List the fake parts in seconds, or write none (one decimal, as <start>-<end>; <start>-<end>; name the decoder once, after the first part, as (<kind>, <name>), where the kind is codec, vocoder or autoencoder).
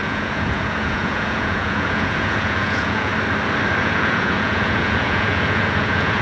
0.0-3.1 (vocoder, Vocos); 3.8-6.2